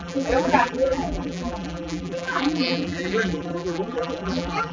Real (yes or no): no